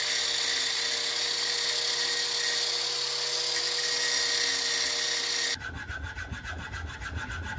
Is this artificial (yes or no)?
no